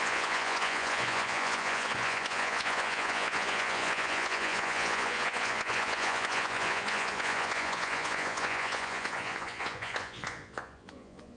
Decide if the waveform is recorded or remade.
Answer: remade